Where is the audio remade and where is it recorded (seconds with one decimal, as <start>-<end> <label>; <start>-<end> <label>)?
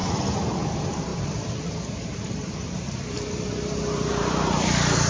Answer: 0.0-0.7 recorded; 0.7-5.1 remade